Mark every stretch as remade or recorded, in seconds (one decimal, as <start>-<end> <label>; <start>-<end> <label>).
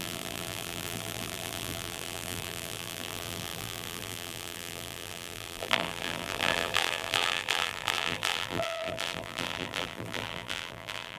0.0-11.2 remade